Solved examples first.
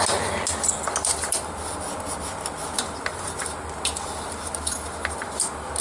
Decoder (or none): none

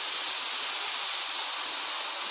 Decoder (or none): none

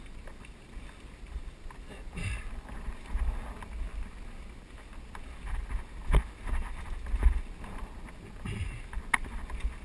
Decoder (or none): none